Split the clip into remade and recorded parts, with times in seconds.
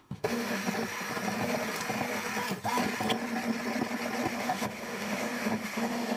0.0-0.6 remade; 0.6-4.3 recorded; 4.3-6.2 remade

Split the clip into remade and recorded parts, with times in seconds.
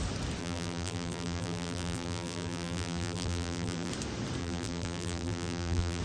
0.0-0.4 recorded; 0.4-3.9 remade; 3.9-4.4 recorded; 4.4-6.0 remade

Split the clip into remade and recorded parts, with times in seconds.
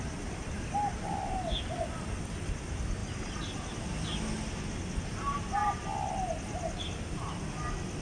0.0-8.0 recorded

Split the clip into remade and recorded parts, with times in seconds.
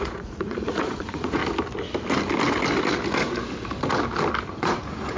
0.0-1.4 remade; 1.4-4.5 recorded; 4.5-5.2 remade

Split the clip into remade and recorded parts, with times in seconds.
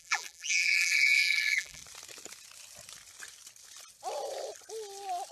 0.0-1.8 remade; 1.8-5.3 recorded